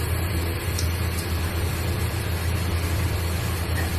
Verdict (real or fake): fake